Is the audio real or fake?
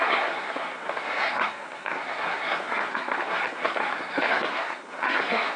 fake